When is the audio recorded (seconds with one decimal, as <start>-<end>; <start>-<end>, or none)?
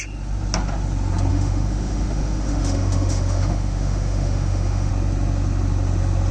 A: 0.0-1.3; 4.9-6.3